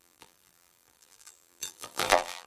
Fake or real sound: fake